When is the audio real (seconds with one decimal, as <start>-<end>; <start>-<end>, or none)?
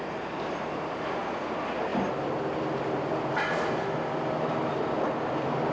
0.0-5.7